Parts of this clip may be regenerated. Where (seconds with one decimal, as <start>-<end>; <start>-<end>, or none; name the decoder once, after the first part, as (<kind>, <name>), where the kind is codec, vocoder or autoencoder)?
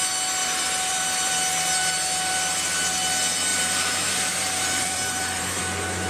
0.4-1.3 (vocoder, BigVGAN v2); 3.5-5.6